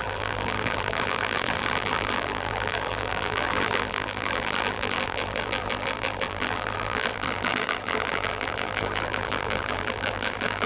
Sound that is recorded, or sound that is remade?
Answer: remade